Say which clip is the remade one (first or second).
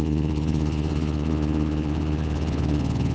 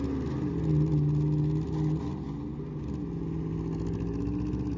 first